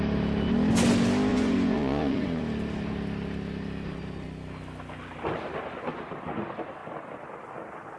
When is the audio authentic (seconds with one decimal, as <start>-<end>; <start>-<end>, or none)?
0.0-1.3; 2.4-8.0

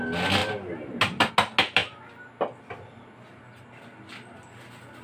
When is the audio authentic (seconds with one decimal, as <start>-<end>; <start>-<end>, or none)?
0.0-5.0

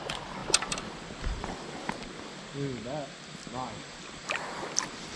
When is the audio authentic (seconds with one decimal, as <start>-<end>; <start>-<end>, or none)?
0.0-5.2

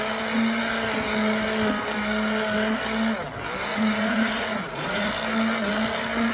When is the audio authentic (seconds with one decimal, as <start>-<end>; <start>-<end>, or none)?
0.0-3.7; 5.1-6.3

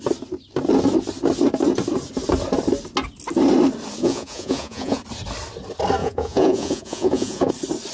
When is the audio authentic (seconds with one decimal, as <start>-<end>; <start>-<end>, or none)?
0.0-4.0; 5.0-6.0; 7.5-7.9

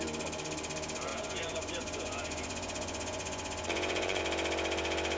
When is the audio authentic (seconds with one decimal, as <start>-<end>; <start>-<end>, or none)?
0.0-1.1; 4.2-5.2

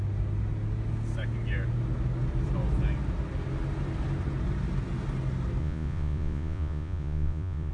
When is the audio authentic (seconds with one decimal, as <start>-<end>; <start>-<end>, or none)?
0.0-5.6

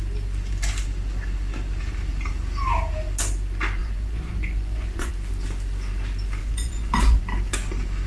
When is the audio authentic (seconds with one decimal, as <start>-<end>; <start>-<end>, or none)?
0.0-3.8; 5.1-6.4; 7.2-8.1